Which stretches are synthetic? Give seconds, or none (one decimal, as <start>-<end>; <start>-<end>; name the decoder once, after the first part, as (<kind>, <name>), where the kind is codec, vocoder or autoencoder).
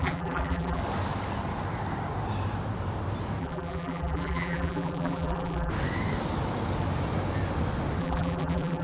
0.0-0.8 (vocoder, BigVGAN v2); 3.4-5.7; 8.0-8.8